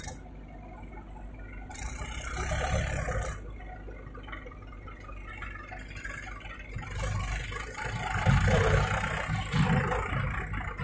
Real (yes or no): yes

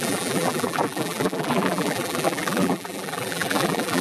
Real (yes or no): no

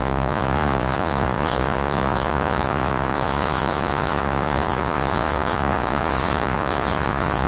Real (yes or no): no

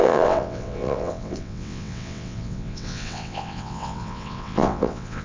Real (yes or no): no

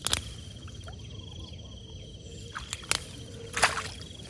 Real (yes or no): yes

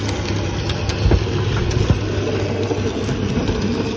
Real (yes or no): yes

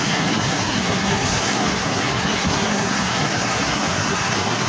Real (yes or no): no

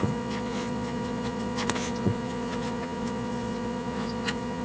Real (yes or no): no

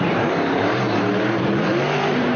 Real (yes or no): no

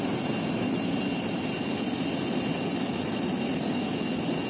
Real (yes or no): yes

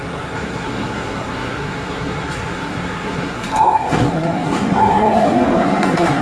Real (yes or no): no